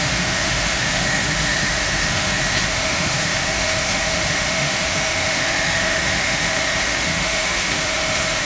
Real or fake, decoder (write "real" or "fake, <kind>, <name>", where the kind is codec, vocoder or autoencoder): fake, autoencoder, DAC-VAE